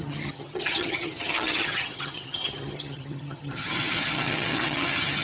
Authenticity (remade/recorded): remade